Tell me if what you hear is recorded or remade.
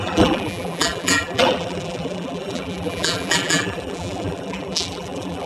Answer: remade